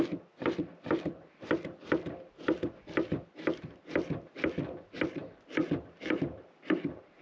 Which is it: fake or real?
real